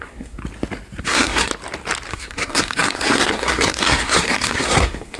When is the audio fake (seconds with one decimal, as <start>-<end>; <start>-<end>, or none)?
0.0-0.4; 1.0-1.5; 2.1-5.2